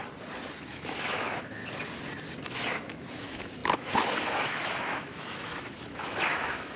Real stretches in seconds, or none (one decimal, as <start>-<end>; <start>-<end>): 0.0-0.7; 1.6-2.7